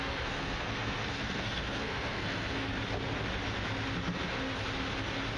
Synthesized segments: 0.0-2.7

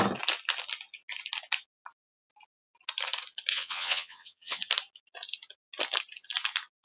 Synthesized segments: 3.5-4.6

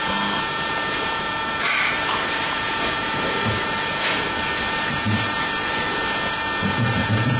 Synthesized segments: 0.0-6.0; 6.6-7.4

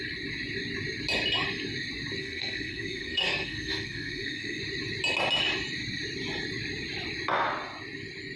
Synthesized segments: 2.2-4.6

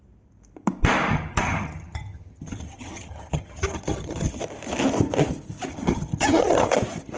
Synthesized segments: 1.1-4.4; 5.7-6.7

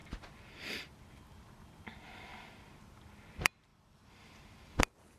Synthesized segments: 3.7-5.2

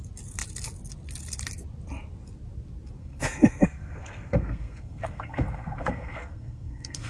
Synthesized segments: 3.0-7.1

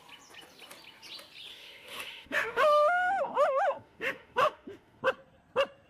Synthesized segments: 1.5-5.0